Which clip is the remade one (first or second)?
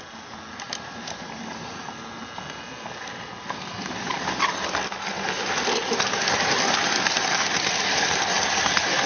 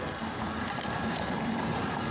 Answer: second